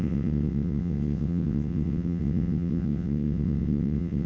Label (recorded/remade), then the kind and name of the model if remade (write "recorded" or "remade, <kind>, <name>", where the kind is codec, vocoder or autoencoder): remade, vocoder, WaveNeXt